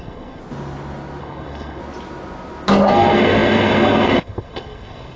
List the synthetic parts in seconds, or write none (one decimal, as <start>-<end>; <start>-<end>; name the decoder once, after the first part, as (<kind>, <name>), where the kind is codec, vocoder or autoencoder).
0.0-0.4 (codec, SNAC); 1.2-1.8; 2.9-5.2